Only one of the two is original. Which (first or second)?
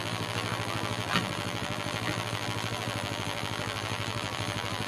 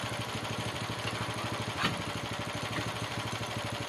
second